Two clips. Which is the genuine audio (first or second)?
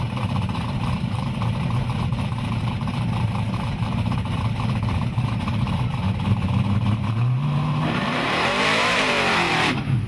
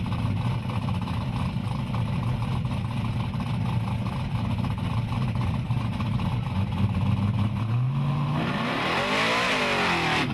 second